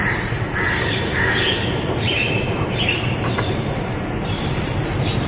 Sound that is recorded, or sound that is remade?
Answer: remade